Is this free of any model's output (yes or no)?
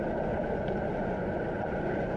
no